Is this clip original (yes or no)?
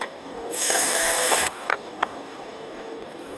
no